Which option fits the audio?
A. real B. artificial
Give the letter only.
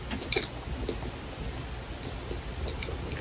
A